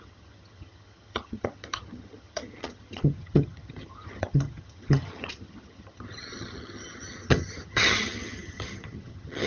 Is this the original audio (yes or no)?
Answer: no